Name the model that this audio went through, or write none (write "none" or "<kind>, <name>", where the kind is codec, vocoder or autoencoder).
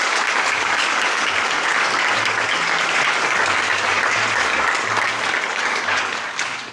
codec, DAC